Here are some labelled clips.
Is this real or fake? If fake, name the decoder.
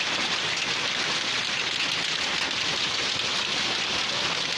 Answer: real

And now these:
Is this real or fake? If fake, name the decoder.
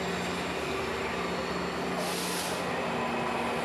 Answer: real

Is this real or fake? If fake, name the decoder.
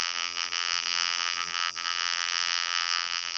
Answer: fake, vocoder, BigVGAN v2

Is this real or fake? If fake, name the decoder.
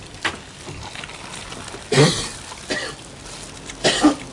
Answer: real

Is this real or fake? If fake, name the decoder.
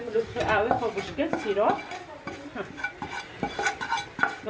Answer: fake, vocoder, BigVGAN v2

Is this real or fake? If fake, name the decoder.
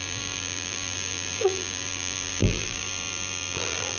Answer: fake, vocoder, BigVGAN v2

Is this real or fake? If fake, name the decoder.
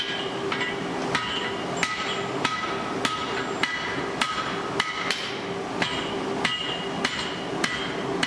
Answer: real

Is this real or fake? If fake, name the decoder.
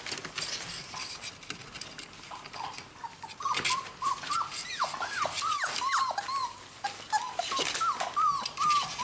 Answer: real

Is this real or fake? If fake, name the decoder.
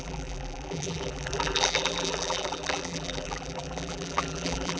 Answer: fake, vocoder, BigVGAN v2